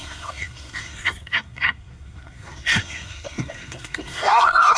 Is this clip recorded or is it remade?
remade